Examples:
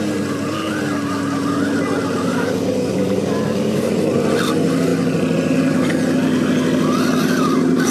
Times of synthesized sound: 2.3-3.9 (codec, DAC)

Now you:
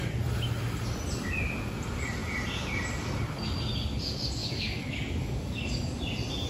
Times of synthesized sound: 4.4-6.0 (codec, DAC)

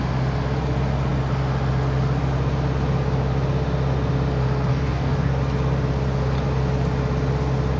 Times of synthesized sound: 4.7-5.4 (codec, DAC)

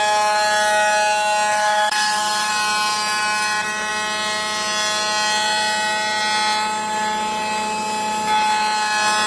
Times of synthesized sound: 1.5-2.5 (codec, DAC)

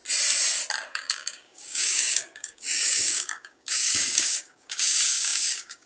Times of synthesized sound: 0.9-5.9 (codec, DAC)

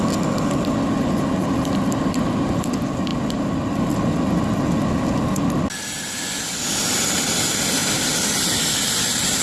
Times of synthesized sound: none

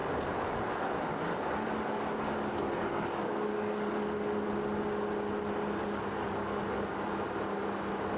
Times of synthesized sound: 0.0-0.6 (codec, DAC); 1.1-4.5; 5.8-6.9